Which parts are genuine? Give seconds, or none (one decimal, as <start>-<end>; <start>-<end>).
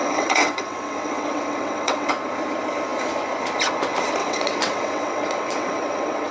2.1-4.2